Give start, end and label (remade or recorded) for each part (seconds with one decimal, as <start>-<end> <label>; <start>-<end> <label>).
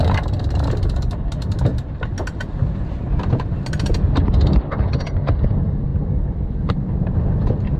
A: 0.0-7.8 recorded